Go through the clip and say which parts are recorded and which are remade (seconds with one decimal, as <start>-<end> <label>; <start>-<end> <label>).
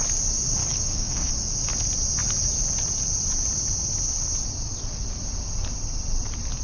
0.0-0.6 recorded; 0.6-1.3 remade; 1.3-6.6 recorded